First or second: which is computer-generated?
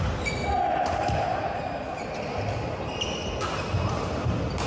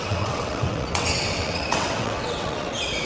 second